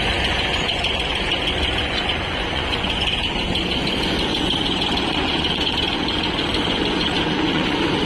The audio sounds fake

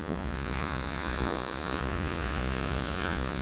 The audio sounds fake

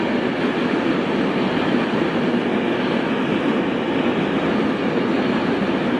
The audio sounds real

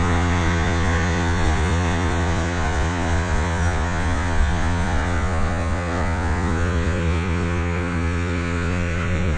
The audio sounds fake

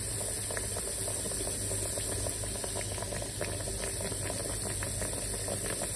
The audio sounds real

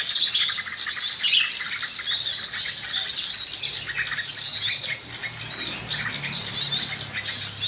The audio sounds real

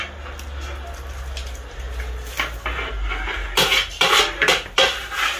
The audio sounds real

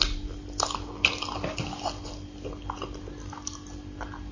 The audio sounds real